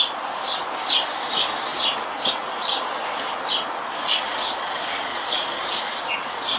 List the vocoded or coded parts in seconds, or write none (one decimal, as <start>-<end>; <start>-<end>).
5.1-5.8